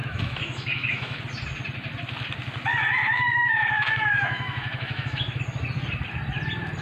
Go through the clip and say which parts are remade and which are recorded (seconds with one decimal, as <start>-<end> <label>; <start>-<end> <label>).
0.0-1.2 remade; 1.2-3.0 recorded; 3.0-5.4 remade; 5.4-6.8 recorded

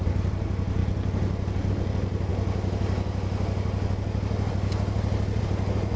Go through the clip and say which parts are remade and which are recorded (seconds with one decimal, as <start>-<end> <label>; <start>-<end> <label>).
0.0-6.0 recorded

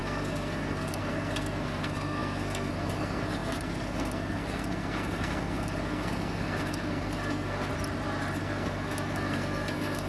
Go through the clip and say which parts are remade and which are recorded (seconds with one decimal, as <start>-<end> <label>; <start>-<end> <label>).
0.0-7.7 remade; 7.7-8.4 recorded; 8.4-10.1 remade

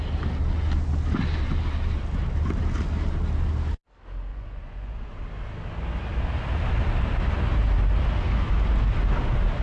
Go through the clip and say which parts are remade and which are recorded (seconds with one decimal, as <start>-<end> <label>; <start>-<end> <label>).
0.0-4.3 recorded; 4.3-5.0 remade; 5.0-9.6 recorded

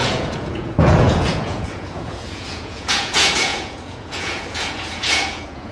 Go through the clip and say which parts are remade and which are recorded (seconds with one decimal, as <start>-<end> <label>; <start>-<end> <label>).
0.0-5.7 remade

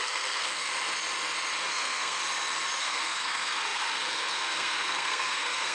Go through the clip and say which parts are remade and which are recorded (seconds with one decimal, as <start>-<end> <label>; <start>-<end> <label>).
0.0-0.7 remade; 0.7-1.7 recorded; 1.7-2.2 remade; 2.2-2.8 recorded; 2.8-5.7 remade